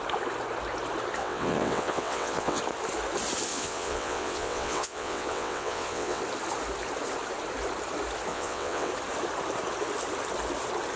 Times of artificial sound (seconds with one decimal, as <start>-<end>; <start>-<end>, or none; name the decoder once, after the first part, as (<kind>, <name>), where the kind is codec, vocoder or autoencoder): 1.2-2.6 (vocoder, WaveNeXt); 3.5-6.2; 8.3-8.9